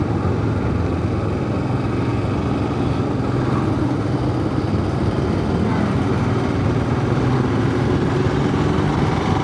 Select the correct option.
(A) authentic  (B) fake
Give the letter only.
A